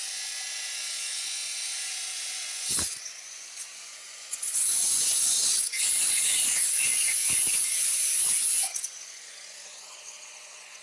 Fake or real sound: fake